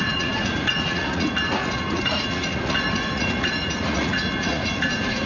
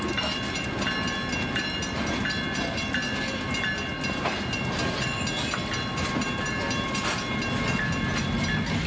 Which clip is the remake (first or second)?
first